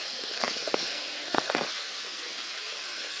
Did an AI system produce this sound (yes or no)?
yes